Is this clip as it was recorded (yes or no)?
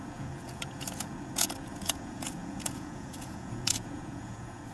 no